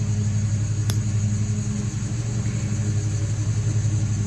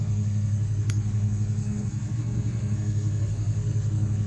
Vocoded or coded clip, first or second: second